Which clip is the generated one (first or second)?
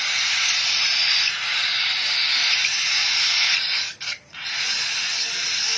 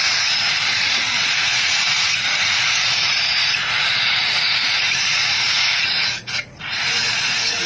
second